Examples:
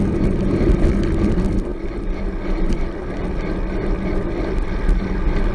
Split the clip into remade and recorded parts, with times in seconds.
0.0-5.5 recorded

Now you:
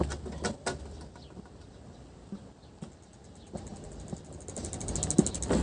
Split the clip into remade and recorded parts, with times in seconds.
0.0-5.6 recorded

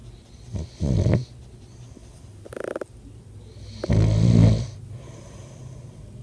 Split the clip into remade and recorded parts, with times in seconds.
0.0-6.2 recorded